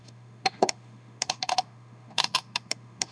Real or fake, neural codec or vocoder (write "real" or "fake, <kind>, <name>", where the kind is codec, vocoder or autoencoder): fake, autoencoder, DAC-VAE